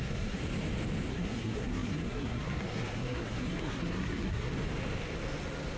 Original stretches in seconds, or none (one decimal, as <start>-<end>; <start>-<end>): 0.4-1.1; 4.5-5.8